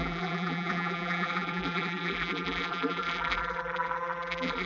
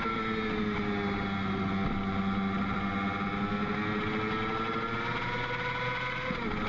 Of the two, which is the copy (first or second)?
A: first